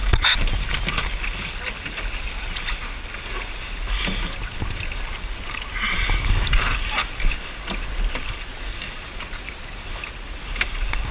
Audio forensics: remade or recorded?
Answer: recorded